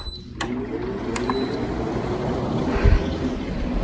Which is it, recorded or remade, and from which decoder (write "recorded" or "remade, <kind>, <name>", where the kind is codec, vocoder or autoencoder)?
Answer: recorded